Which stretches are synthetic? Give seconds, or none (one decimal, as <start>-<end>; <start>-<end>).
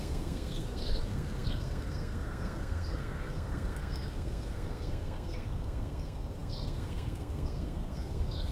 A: 0.0-8.5